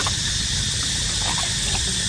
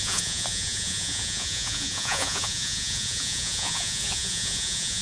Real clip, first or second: first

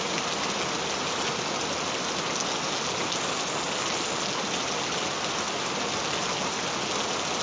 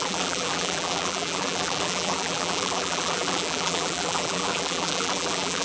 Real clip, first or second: first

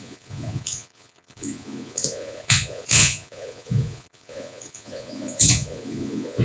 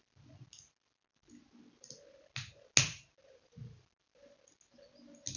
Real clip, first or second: second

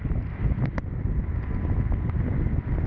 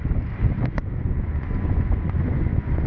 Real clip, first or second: first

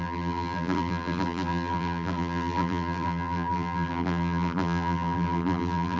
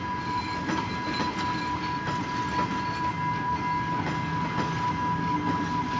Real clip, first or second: second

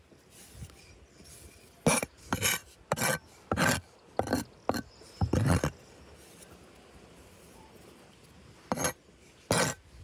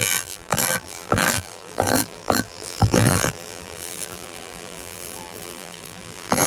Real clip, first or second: first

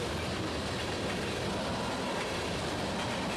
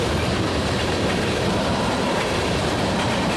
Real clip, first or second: first